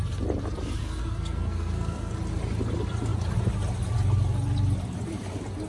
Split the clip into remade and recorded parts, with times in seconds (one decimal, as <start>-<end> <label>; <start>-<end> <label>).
0.0-0.8 recorded; 0.8-2.1 remade; 2.1-5.7 recorded